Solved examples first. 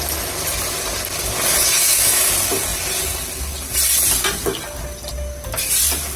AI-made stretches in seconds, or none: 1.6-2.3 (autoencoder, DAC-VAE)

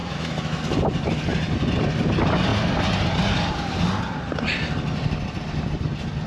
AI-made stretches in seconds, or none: 0.0-0.6 (autoencoder, DAC-VAE)

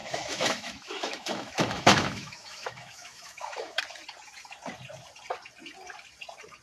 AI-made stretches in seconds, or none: 0.0-3.8 (autoencoder, DAC-VAE)

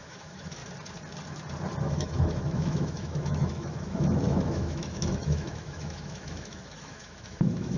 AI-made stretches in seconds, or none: 0.0-0.6 (autoencoder, DAC-VAE); 1.8-7.8